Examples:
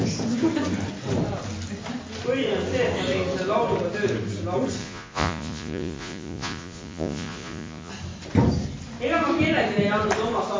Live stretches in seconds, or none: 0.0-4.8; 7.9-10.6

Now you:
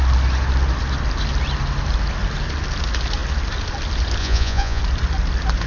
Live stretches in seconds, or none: 0.0-4.2; 4.8-5.7

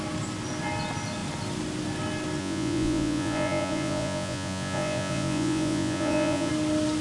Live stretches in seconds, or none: 0.0-2.4; 6.5-7.0

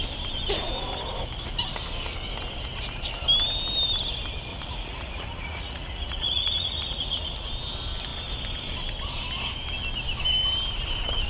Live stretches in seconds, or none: 0.0-4.5; 7.5-11.3

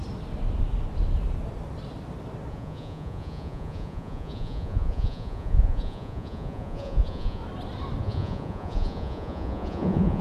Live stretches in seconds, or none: 0.0-2.5; 7.4-8.0

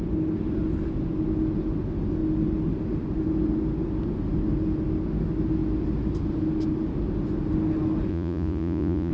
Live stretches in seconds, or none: 0.0-8.1

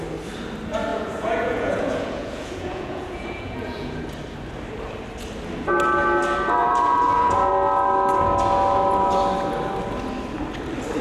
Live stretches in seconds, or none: 0.0-0.9; 4.1-6.6; 7.5-11.0